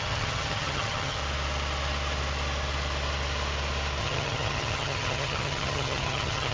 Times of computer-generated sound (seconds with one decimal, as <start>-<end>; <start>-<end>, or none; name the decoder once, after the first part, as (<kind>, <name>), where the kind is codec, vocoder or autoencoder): 0.0-1.2 (vocoder, HiFi-GAN); 4.0-6.5